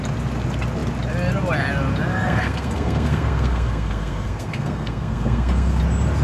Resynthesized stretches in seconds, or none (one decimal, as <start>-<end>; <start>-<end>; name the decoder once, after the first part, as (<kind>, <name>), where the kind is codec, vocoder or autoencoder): 2.1-5.8 (codec, SNAC)